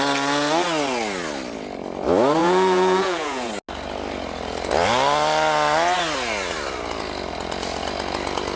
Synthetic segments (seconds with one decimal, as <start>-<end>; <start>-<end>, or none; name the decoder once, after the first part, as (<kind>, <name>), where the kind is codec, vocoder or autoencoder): 2.4-3.5 (vocoder, Vocos)